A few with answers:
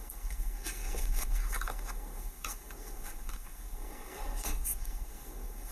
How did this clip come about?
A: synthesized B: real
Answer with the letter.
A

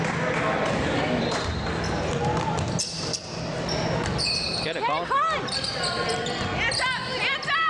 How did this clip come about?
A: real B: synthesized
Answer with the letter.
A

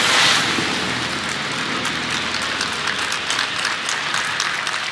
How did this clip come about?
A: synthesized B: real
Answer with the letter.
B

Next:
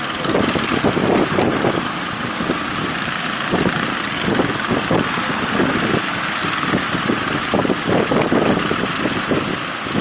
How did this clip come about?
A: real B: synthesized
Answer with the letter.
A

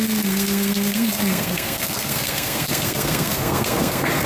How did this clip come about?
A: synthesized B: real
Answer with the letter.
A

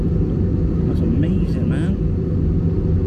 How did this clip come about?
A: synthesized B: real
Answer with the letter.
B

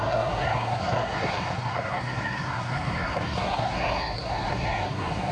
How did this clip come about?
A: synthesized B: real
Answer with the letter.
A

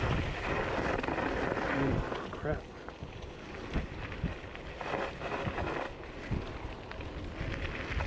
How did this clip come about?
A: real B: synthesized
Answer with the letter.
A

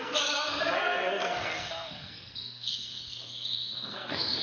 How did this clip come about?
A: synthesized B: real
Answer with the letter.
A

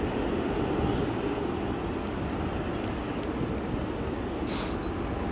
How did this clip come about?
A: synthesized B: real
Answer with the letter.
B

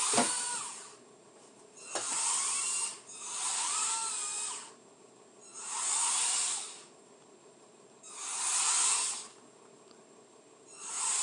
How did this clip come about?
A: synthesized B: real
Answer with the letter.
B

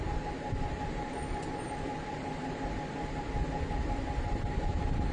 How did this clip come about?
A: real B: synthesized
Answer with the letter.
A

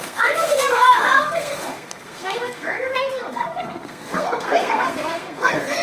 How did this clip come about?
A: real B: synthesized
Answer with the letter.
B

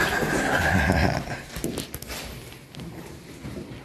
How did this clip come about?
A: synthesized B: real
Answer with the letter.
B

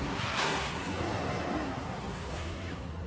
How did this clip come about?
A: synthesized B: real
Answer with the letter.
A